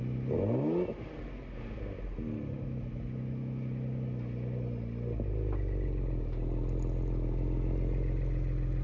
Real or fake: real